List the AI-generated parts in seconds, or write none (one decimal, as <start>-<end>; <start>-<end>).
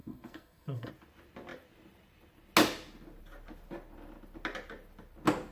0.0-0.9